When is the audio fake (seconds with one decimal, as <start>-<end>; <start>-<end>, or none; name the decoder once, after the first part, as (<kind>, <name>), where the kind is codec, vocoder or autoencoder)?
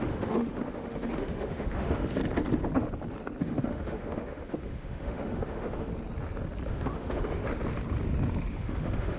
0.0-2.2 (autoencoder, DAC-VAE); 3.4-5.9; 6.7-7.4; 8.5-9.2